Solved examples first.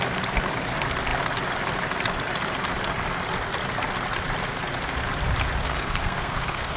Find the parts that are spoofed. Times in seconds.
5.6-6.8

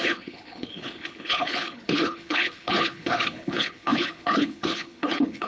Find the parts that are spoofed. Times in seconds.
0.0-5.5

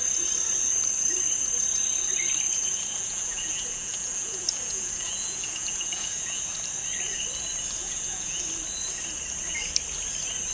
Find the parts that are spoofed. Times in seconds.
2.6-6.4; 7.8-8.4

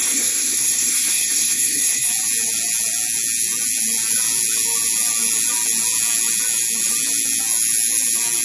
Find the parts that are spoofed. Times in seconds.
0.0-2.1

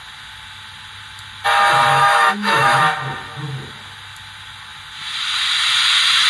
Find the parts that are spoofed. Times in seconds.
1.9-2.8

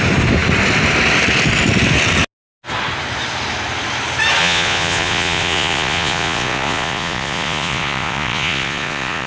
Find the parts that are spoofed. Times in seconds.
4.4-9.3